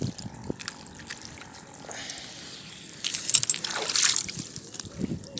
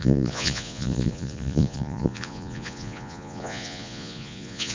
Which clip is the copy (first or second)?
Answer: second